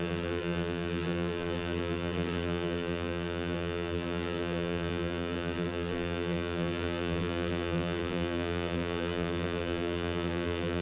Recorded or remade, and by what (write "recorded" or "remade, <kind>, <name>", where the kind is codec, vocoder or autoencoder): remade, vocoder, BigVGAN v2